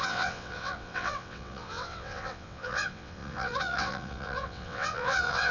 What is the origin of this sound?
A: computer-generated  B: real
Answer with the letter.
A